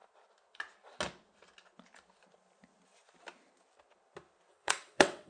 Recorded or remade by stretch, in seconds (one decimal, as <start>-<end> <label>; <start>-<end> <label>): 0.0-4.5 recorded; 4.5-5.3 remade